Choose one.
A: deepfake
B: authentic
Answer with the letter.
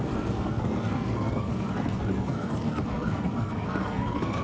A